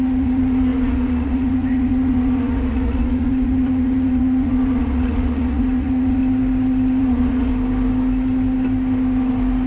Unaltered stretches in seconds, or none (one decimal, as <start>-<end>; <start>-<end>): 6.2-7.0; 7.5-9.7